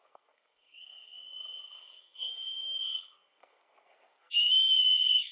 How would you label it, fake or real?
fake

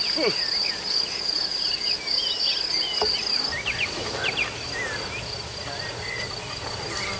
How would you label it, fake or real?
real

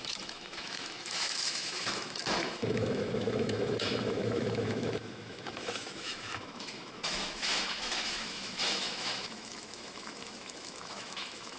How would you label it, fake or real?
fake